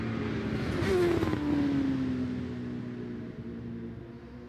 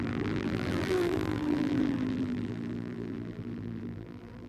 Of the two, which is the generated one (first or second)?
second